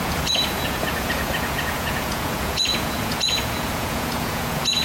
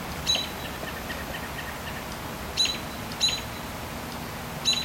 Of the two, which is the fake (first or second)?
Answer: first